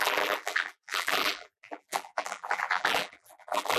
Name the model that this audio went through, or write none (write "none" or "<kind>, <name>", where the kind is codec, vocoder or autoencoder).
vocoder, BigVGAN v2